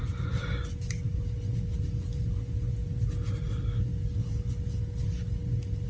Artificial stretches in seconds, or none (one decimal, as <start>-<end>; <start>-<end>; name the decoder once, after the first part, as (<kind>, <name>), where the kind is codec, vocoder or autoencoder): none